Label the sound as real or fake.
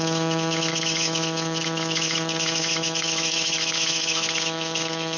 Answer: fake